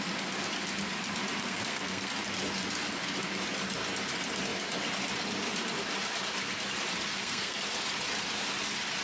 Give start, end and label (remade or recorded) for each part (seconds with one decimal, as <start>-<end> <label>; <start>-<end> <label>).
0.0-1.4 recorded; 1.4-2.1 remade; 2.1-7.1 recorded; 7.1-7.6 remade; 7.6-9.0 recorded